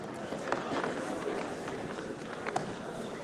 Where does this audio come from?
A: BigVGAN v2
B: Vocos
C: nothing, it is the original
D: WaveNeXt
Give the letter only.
A